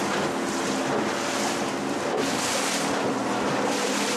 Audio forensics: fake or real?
real